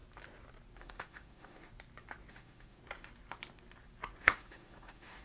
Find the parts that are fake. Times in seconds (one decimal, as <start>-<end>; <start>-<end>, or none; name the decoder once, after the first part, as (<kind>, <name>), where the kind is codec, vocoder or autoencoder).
0.8-1.7 (autoencoder, DAC-VAE); 2.3-2.8; 4.2-5.2